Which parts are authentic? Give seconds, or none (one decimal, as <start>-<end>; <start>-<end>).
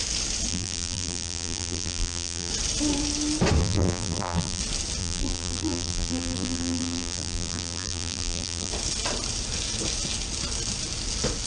0.0-0.5; 2.5-3.6; 4.6-5.0; 8.7-11.5